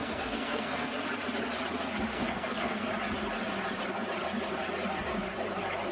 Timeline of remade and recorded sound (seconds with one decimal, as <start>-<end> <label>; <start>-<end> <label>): 0.0-0.9 remade; 0.9-2.1 recorded; 2.1-2.9 remade; 2.9-5.9 recorded